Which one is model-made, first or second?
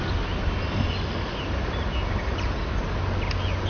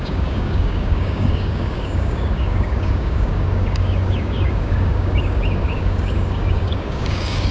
second